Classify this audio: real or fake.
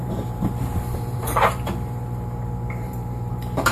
fake